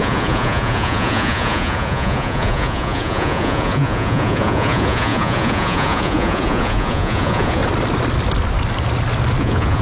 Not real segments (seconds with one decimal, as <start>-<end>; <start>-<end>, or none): 0.0-7.6; 9.4-9.8